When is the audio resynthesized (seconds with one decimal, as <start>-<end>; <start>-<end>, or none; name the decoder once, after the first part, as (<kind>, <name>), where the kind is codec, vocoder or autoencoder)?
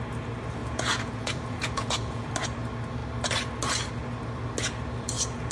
0.6-2.3 (vocoder, Vocos)